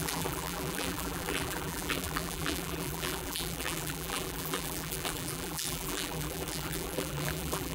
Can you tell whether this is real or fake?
fake